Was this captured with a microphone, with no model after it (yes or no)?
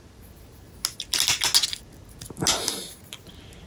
yes